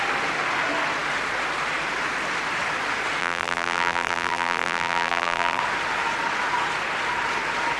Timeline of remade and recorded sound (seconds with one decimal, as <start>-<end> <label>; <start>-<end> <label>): 0.0-3.2 recorded; 3.2-5.6 remade; 5.6-7.8 recorded